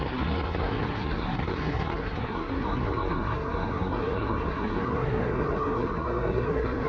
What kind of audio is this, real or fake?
fake